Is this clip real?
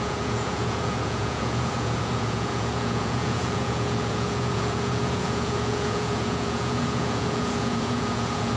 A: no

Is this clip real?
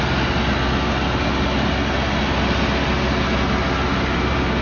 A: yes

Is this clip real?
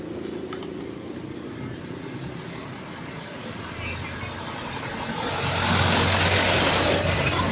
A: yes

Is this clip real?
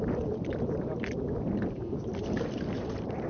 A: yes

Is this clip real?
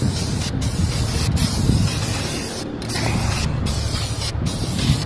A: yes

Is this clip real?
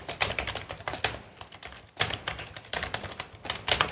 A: yes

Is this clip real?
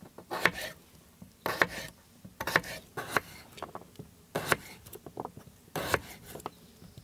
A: yes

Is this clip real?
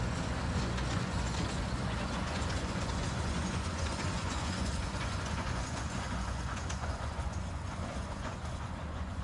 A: no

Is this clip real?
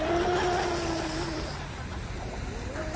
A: yes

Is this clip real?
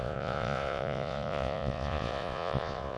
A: no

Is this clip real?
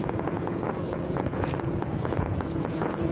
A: no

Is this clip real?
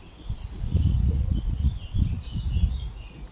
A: no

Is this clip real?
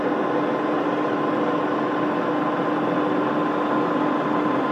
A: yes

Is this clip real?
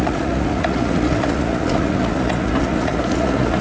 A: no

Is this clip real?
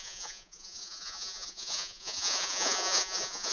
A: no